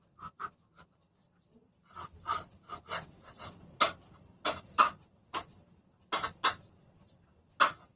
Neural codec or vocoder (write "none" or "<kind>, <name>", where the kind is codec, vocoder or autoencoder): none